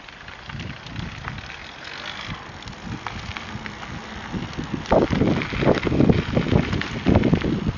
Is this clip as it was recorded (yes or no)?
yes